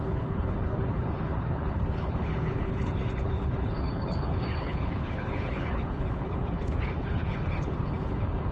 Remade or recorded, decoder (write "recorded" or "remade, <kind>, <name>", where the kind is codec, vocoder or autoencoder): remade, codec, HILCodec